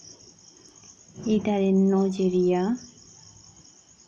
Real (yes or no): yes